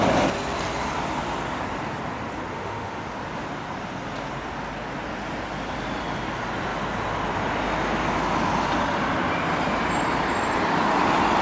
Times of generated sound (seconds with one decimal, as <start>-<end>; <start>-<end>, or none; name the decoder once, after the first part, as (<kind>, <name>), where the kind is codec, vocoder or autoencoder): 2.5-3.0 (autoencoder, DAC-VAE)